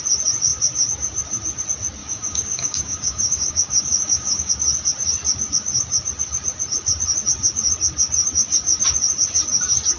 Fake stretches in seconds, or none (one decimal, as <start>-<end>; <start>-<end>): 2.0-4.5